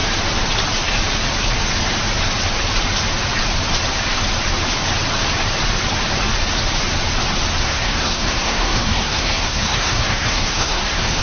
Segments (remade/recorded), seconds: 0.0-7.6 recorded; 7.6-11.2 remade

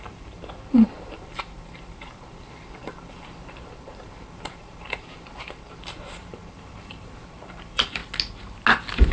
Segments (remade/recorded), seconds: 0.0-8.0 remade; 8.0-9.1 recorded

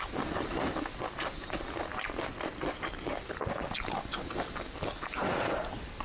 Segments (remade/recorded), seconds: 0.0-6.0 recorded

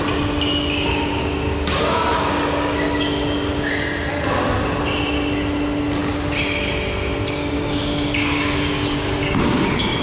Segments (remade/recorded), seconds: 0.0-0.9 recorded; 0.9-3.7 remade; 3.7-7.4 recorded; 7.4-10.0 remade

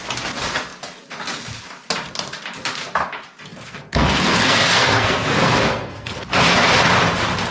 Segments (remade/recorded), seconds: 0.0-3.5 recorded; 3.5-6.2 remade; 6.2-7.5 recorded